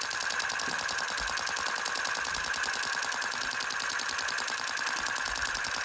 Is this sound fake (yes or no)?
no